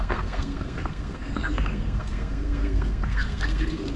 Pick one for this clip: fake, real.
fake